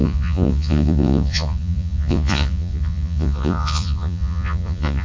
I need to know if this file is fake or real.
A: fake